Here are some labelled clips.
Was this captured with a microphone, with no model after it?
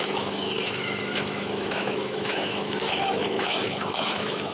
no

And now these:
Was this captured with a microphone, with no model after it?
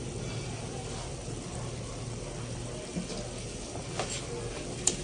yes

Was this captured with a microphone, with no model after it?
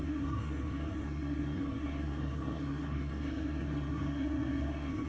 no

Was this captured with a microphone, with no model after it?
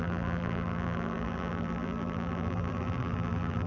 no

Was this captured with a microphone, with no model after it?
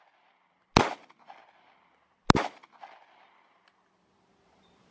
yes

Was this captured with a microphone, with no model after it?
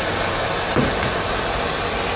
yes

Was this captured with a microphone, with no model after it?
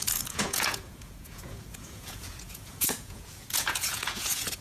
no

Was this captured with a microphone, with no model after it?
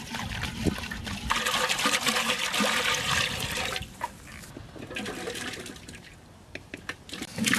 yes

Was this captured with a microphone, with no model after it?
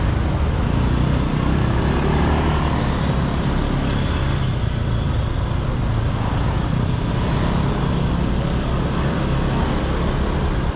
yes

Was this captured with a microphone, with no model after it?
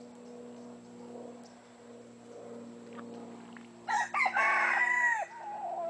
yes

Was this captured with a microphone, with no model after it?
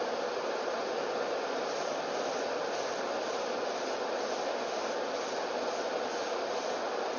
yes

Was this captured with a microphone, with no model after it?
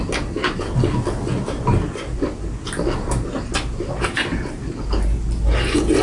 yes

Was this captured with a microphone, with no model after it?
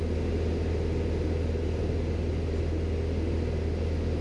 yes